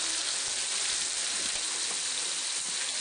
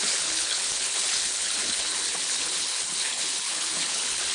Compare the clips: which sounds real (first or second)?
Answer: first